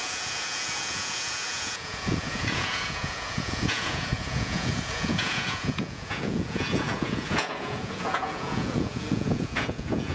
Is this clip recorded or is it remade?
remade